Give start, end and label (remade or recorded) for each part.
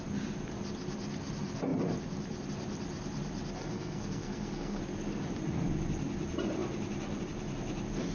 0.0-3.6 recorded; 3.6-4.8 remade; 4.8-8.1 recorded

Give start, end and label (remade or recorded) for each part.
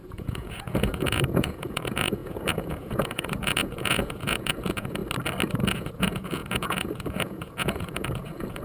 0.0-5.0 remade; 5.0-5.5 recorded; 5.5-8.6 remade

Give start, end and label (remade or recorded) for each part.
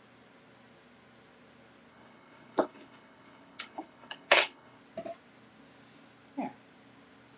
0.0-1.9 recorded; 1.9-4.8 remade; 4.8-7.4 recorded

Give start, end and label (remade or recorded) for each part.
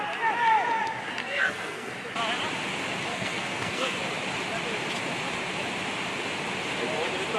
0.0-1.2 recorded; 1.2-1.9 remade; 1.9-3.1 recorded; 3.1-4.0 remade; 4.0-7.4 recorded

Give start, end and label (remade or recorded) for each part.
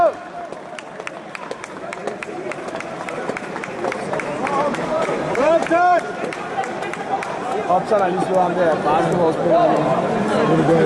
0.0-2.0 recorded; 2.0-6.0 remade; 6.0-10.9 recorded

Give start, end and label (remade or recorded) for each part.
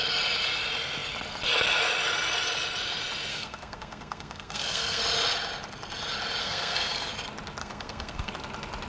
0.0-3.3 recorded; 3.3-5.0 remade; 5.0-6.4 recorded; 6.4-7.1 remade; 7.1-7.6 recorded; 7.6-8.3 remade; 8.3-8.9 recorded